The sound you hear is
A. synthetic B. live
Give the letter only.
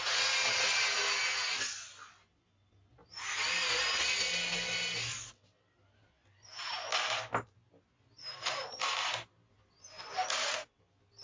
B